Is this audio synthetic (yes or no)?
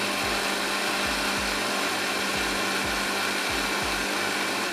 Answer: no